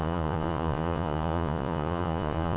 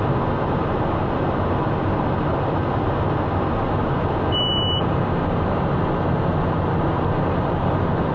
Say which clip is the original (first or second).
second